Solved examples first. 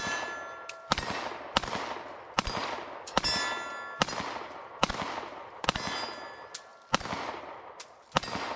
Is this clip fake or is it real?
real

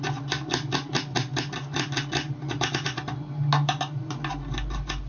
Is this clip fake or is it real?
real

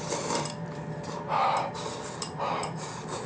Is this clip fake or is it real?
real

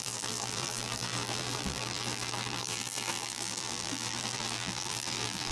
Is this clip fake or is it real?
fake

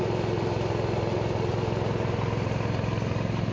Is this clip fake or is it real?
real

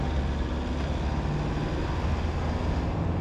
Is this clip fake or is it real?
real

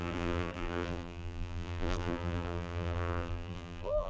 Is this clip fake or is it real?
fake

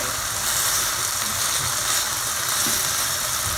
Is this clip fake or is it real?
fake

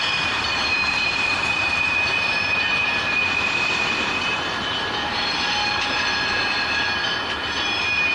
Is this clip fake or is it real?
fake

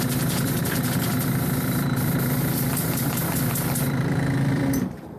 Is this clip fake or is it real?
fake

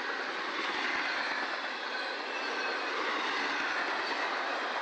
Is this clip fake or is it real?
real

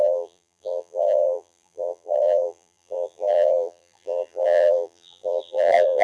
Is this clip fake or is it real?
fake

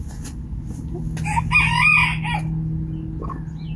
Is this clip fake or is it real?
real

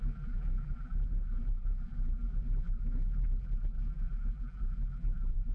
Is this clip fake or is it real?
fake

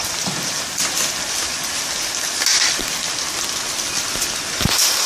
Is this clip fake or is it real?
real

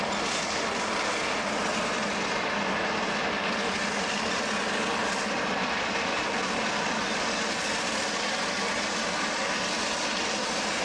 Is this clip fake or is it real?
real